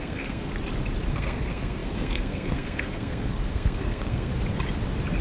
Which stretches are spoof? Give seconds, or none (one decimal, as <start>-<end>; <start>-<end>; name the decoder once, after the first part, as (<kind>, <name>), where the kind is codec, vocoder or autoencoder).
0.0-0.5 (codec, SNAC); 1.1-4.3